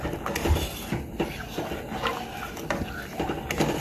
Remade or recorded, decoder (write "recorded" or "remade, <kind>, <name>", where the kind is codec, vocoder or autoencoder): recorded